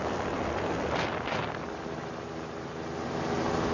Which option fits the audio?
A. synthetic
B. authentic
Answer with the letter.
B